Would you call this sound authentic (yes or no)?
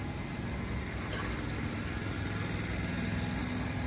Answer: yes